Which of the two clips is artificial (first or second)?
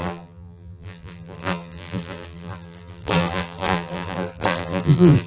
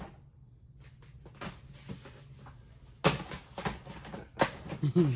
first